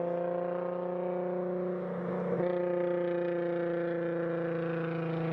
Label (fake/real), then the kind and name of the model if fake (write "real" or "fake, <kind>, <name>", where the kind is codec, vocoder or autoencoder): real